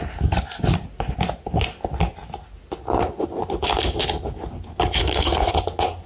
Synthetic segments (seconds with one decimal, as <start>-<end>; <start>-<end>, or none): 5.0-5.5